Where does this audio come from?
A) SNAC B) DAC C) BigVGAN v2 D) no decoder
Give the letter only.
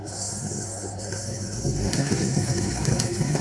A